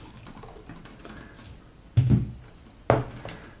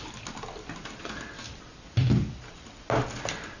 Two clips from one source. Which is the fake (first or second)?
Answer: second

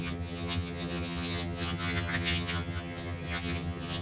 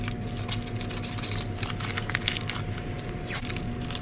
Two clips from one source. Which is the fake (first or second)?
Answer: first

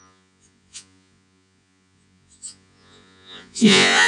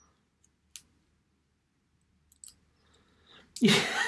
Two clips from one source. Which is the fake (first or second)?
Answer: first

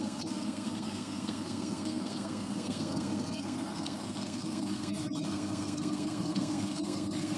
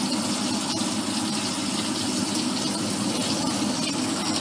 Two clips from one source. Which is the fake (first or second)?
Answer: first